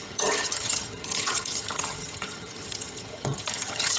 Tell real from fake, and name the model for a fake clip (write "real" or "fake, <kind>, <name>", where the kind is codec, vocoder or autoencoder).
fake, vocoder, HiFi-GAN